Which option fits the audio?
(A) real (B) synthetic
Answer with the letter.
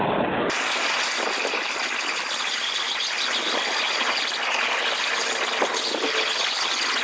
A